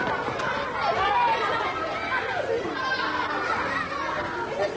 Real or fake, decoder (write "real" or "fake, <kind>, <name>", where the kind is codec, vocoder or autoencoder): real